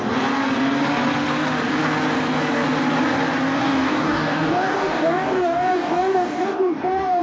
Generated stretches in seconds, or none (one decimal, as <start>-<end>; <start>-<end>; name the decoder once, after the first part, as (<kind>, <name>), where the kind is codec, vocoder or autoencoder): 3.6-7.2 (codec, DAC)